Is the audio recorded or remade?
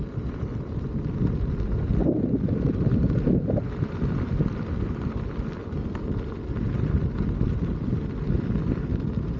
recorded